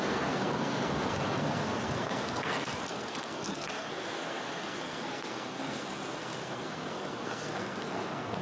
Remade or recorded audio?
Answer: remade